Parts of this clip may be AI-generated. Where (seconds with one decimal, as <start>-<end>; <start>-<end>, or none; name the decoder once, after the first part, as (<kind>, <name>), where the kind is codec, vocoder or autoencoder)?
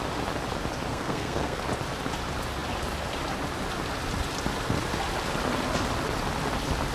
0.9-1.6 (codec, SNAC)